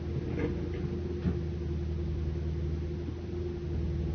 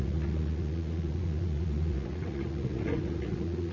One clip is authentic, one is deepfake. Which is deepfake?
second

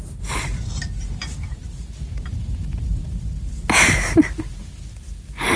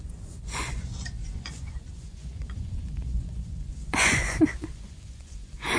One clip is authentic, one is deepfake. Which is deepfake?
second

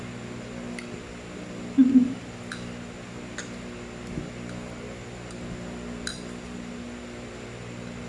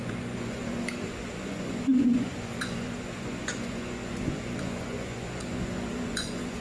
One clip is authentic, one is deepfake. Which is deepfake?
second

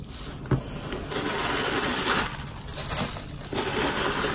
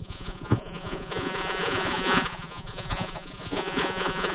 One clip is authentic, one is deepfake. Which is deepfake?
second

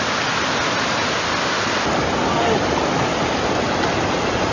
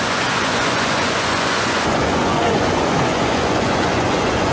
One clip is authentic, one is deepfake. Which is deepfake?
second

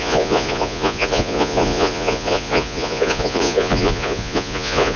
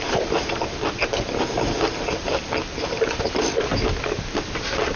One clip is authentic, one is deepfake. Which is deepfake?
first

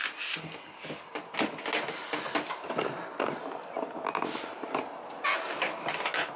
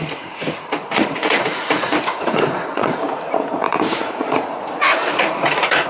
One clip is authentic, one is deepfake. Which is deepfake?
second